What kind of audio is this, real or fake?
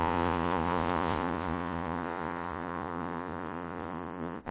fake